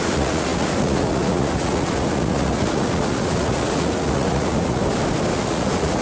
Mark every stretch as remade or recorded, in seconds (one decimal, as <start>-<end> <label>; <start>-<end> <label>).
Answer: 0.0-4.8 remade; 4.8-5.3 recorded; 5.3-6.0 remade